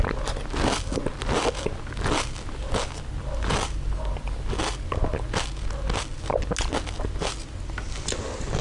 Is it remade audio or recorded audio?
recorded